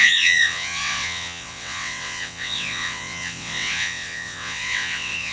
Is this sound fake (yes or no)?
yes